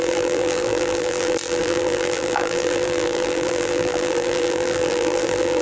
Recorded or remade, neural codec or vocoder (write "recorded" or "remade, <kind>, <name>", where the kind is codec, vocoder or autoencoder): remade, vocoder, BigVGAN v2